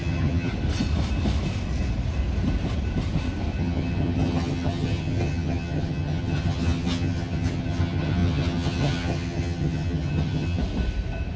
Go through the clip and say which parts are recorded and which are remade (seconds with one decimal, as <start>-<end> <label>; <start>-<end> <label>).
0.0-0.5 remade; 0.5-3.6 recorded; 3.6-10.6 remade; 10.6-11.4 recorded